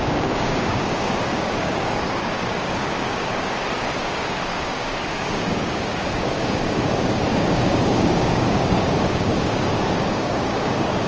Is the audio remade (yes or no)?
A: yes